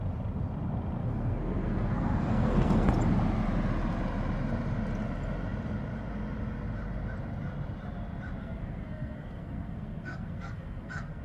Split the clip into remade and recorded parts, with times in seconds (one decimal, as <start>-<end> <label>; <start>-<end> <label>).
0.0-1.0 recorded; 1.0-2.9 remade; 2.9-8.4 recorded; 8.4-11.2 remade

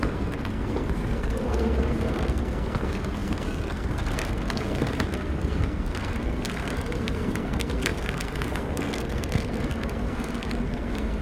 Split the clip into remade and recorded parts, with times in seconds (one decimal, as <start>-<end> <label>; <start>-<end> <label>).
0.0-11.2 remade

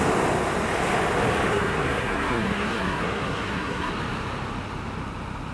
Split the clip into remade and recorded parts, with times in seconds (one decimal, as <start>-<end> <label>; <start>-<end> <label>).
0.0-1.5 recorded; 1.5-3.9 remade; 3.9-5.5 recorded

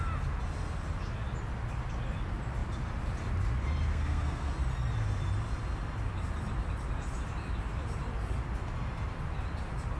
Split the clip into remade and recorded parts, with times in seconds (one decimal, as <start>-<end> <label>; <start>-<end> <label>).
0.0-3.9 recorded; 3.9-4.5 remade; 4.5-10.0 recorded

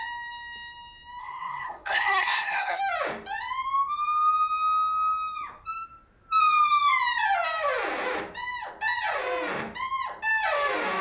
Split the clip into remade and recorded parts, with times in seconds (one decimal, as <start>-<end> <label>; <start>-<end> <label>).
0.0-1.2 recorded; 1.2-2.8 remade; 2.8-11.0 recorded